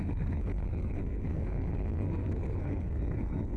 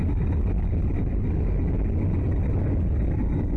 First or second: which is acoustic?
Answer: second